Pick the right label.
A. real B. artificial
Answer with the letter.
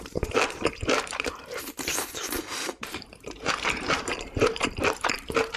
B